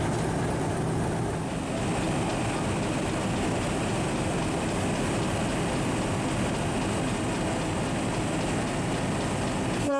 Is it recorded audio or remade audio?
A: recorded